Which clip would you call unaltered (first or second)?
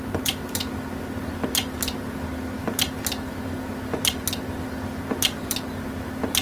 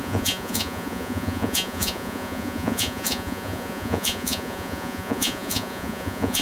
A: first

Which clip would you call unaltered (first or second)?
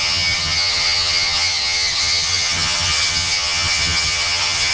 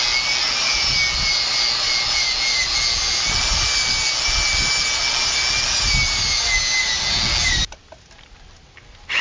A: second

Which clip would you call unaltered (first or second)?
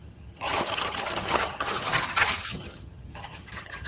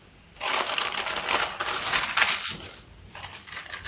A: second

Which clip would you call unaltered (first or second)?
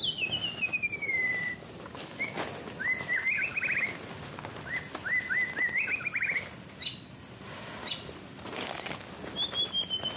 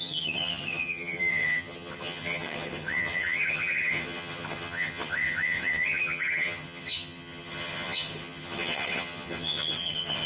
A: first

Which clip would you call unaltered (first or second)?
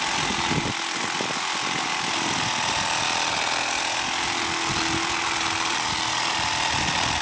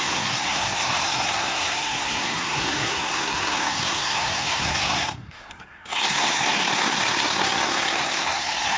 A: first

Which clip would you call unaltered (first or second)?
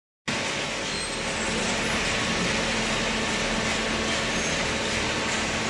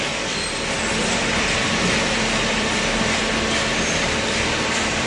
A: first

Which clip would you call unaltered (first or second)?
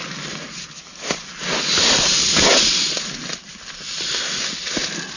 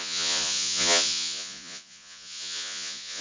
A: first